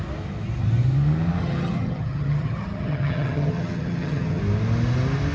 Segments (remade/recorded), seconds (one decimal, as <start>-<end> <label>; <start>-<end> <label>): 0.0-1.4 recorded; 1.4-4.4 remade; 4.4-5.3 recorded